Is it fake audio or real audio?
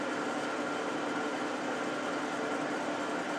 real